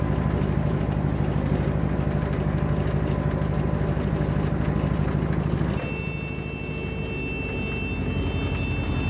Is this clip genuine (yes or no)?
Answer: yes